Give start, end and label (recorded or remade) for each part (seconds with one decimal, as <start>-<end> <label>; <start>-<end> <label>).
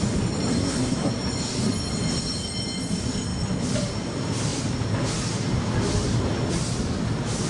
0.0-0.5 recorded; 0.5-1.1 remade; 1.1-7.5 recorded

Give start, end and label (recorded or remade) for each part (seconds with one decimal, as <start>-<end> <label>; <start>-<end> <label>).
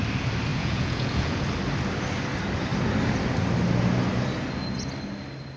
0.0-0.5 recorded; 0.5-1.4 remade; 1.4-5.6 recorded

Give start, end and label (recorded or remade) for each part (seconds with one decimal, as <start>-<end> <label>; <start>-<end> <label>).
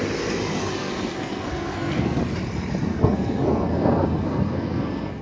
0.0-0.8 recorded; 0.8-2.2 remade; 2.2-2.9 recorded; 2.9-5.2 remade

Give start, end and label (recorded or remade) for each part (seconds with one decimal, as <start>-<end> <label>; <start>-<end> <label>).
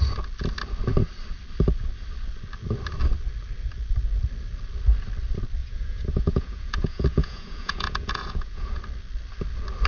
0.0-5.6 recorded; 5.6-8.8 remade; 8.8-9.9 recorded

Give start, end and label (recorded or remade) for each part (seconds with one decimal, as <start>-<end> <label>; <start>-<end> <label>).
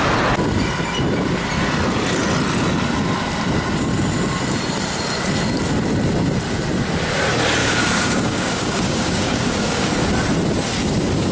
0.0-7.6 recorded; 7.6-9.9 remade; 9.9-11.3 recorded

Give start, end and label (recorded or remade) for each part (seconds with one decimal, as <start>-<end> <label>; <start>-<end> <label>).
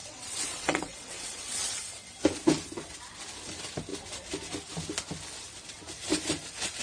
0.0-1.8 remade; 1.8-6.8 recorded